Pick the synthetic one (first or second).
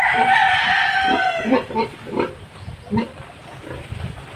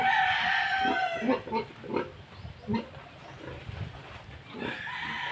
first